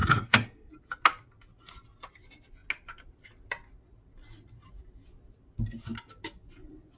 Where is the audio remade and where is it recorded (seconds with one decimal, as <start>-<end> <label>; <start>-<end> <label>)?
0.0-0.7 remade; 0.7-7.0 recorded